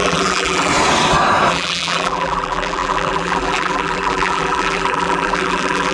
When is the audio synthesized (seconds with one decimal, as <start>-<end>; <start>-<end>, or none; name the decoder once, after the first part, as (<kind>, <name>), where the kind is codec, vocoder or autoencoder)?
0.0-0.7 (vocoder, BigVGAN v2); 1.5-5.9